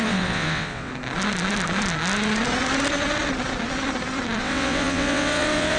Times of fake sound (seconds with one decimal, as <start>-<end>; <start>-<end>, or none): 0.0-0.9; 4.4-5.8